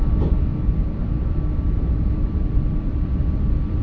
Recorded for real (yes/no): no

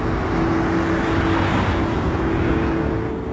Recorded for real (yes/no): yes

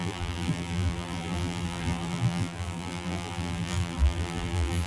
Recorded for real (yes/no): no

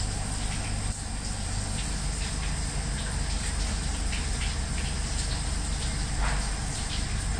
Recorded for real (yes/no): yes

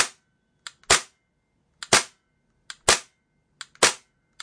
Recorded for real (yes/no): yes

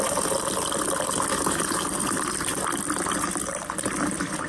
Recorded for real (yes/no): no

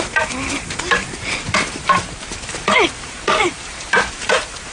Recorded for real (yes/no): no